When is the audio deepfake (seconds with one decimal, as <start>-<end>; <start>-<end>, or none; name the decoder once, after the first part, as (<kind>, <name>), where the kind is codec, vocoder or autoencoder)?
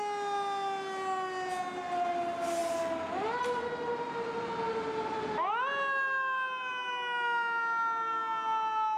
none